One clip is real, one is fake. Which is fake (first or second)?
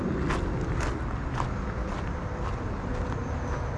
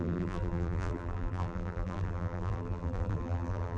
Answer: second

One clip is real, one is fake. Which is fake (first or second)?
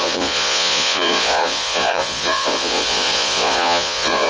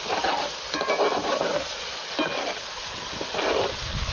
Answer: first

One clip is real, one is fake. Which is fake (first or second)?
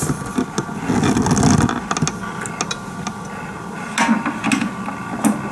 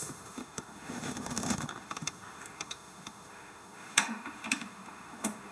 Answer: second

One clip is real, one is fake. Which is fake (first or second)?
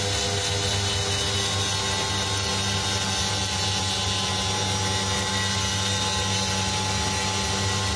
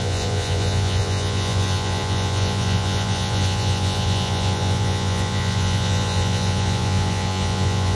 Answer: second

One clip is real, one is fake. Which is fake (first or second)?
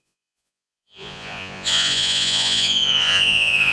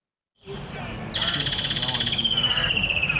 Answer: first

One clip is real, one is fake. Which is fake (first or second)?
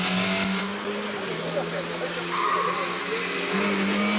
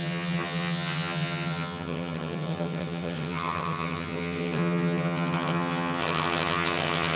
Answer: second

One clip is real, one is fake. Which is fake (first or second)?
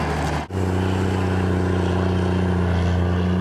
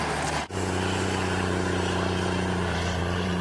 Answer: second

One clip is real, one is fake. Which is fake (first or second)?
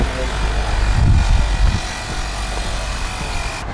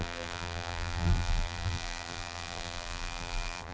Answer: second